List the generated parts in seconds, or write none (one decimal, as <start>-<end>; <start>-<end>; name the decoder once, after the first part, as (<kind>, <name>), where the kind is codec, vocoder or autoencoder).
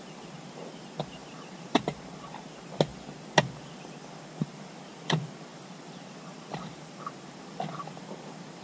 1.2-1.8 (vocoder, BigVGAN v2); 5.5-7.1